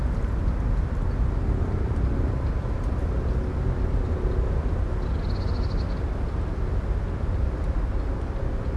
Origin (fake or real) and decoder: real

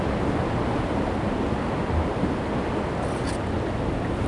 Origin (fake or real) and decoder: real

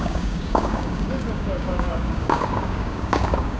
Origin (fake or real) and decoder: fake, codec, DAC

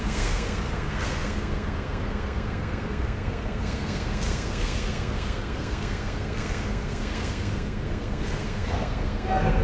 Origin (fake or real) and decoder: fake, codec, SNAC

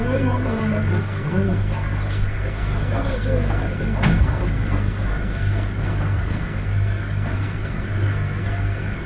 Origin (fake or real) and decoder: fake, codec, SNAC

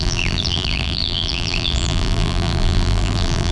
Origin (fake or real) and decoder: fake, vocoder, BigVGAN v2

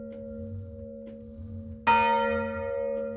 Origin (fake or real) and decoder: real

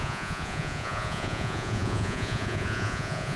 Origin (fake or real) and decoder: fake, vocoder, Vocos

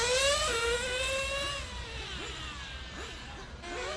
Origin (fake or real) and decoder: real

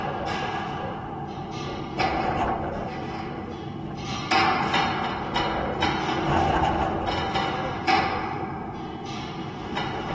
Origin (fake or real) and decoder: real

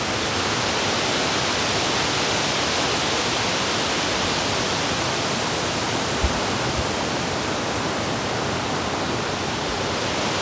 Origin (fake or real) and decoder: real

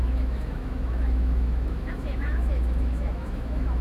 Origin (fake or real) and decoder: fake, autoencoder, DAC-VAE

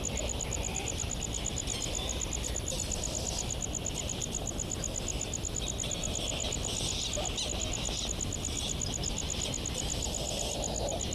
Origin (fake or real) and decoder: real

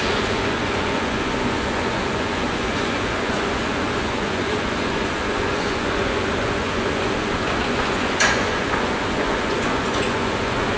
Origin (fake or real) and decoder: fake, vocoder, Vocos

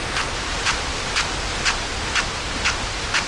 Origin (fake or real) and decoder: real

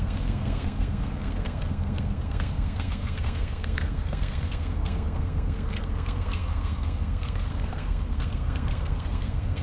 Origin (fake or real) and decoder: fake, codec, SNAC